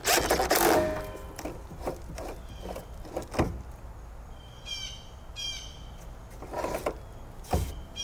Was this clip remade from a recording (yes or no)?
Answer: no